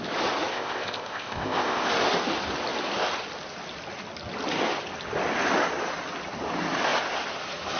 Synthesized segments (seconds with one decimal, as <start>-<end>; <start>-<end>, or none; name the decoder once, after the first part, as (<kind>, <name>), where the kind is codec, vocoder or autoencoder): 0.5-1.9 (codec, ZipCodec)